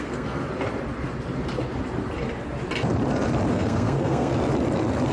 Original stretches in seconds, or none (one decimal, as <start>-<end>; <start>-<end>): 0.4-3.5; 4.3-5.1